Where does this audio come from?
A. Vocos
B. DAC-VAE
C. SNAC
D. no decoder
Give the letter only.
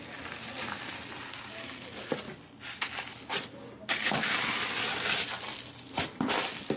D